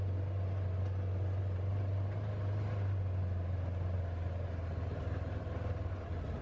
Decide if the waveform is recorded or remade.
recorded